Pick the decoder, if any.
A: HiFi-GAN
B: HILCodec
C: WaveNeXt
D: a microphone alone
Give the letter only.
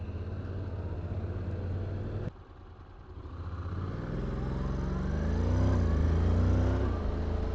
D